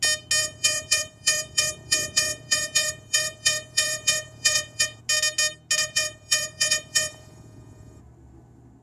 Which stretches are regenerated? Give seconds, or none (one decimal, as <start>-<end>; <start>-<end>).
0.4-5.0; 5.8-8.0